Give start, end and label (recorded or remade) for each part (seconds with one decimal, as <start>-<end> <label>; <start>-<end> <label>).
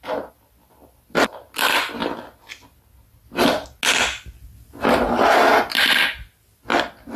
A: 0.0-7.2 recorded